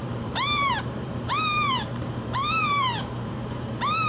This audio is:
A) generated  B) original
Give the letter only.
A